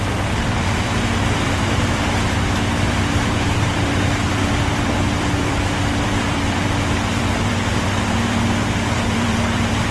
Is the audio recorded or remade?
remade